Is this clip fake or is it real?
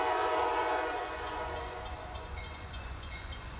fake